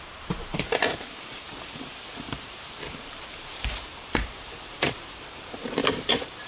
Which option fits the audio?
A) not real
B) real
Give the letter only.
A